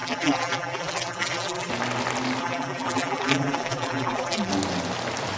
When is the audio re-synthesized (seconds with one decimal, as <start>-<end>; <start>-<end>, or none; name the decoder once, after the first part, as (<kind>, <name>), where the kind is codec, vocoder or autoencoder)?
0.0-1.7 (vocoder, BigVGAN v2); 2.4-4.5